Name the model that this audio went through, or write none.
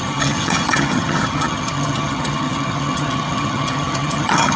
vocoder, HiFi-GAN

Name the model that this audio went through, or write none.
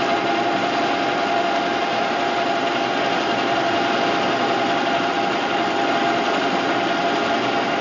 none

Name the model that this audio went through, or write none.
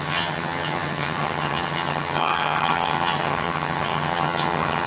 vocoder, HiFi-GAN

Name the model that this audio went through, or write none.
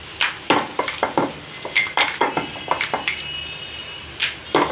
none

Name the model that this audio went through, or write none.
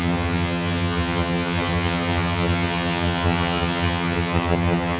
vocoder, HiFi-GAN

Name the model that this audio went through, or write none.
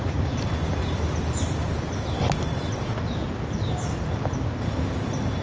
none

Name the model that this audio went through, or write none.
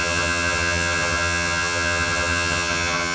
vocoder, HiFi-GAN